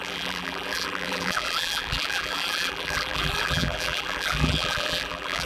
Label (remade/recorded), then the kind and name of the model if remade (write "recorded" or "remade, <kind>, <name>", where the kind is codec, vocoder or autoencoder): remade, vocoder, BigVGAN v2